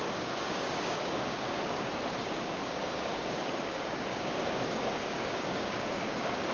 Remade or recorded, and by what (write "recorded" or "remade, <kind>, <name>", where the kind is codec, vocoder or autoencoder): remade, codec, DAC